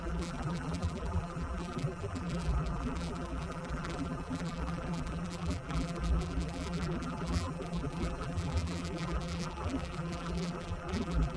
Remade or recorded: remade